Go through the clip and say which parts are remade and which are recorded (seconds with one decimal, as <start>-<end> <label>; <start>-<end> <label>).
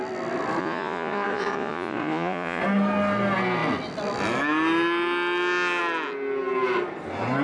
0.0-0.6 recorded; 0.6-2.6 remade; 2.6-7.4 recorded